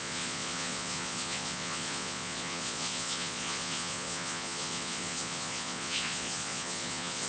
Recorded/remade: remade